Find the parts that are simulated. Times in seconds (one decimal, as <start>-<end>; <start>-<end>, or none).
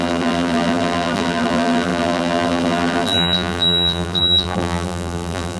0.0-5.6